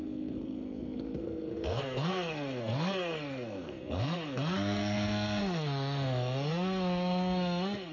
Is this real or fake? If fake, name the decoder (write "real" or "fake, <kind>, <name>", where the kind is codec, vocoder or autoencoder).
fake, codec, SNAC